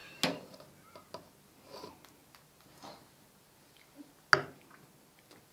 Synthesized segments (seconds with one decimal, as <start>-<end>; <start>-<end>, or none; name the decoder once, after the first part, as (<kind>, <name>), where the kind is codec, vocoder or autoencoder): none